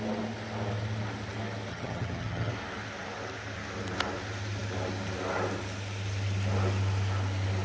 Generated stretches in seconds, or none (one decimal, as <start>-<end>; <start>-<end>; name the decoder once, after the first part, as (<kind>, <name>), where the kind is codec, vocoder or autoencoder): 1.7-2.5 (vocoder, HiFi-GAN)